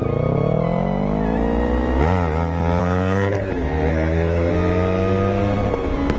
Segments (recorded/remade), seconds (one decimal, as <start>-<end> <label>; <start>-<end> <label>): 0.0-2.8 recorded; 2.8-3.5 remade; 3.5-3.9 recorded; 3.9-4.5 remade; 4.5-6.2 recorded